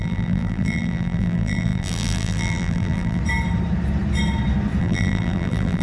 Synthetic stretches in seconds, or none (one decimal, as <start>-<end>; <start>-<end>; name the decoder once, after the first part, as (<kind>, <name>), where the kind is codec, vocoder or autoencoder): 0.0-3.2 (vocoder, BigVGAN v2); 4.8-5.8